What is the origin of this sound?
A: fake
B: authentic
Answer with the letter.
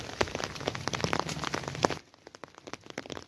B